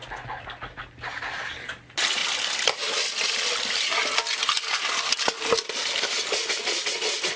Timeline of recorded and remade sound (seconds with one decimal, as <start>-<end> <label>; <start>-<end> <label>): 0.0-7.4 recorded